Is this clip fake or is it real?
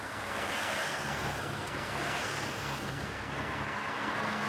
fake